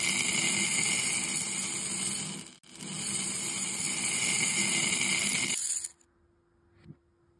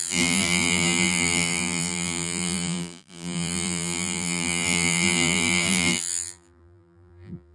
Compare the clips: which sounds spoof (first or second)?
second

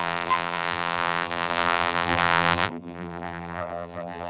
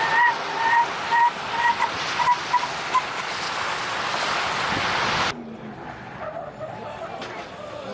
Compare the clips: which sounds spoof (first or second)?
first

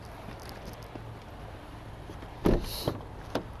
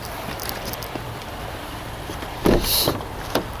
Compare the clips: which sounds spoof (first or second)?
second